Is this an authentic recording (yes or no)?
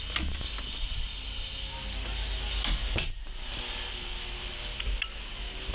yes